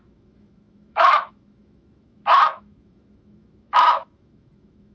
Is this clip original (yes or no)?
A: no